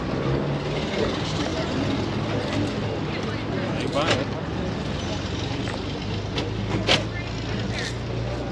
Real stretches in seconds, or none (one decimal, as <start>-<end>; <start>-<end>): 0.0-8.5